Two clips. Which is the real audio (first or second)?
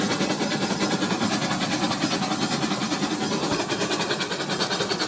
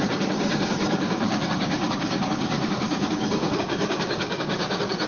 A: first